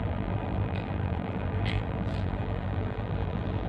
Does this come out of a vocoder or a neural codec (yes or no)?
yes